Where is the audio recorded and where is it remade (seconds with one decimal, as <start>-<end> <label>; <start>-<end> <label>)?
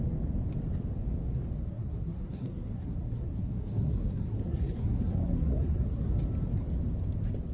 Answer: 0.0-1.6 recorded; 1.6-6.1 remade; 6.1-7.5 recorded